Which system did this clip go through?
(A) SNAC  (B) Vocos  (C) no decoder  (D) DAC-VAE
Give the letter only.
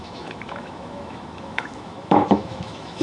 D